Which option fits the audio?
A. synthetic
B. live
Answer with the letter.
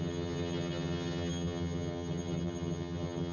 A